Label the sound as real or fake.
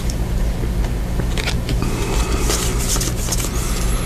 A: real